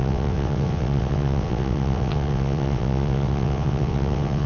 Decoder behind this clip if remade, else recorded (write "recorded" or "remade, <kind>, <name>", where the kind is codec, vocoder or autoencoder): remade, vocoder, WaveNeXt